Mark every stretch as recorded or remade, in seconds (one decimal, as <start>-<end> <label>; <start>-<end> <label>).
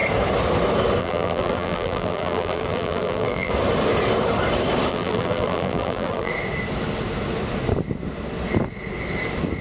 0.0-1.0 recorded; 1.0-3.5 remade; 3.5-4.9 recorded; 4.9-6.3 remade; 6.3-9.6 recorded